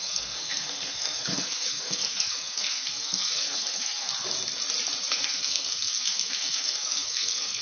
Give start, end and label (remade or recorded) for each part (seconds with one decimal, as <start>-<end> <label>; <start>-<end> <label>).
0.0-4.1 remade; 4.1-5.1 recorded; 5.1-7.6 remade